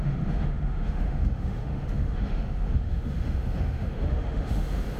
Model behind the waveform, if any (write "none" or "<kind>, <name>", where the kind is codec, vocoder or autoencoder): autoencoder, DAC-VAE